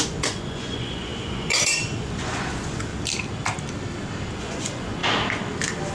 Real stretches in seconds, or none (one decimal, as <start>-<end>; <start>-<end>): 2.9-4.4; 5.0-5.9